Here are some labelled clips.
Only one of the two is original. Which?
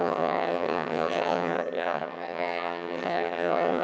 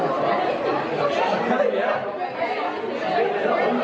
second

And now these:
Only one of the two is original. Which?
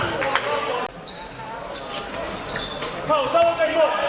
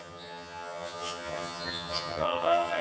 first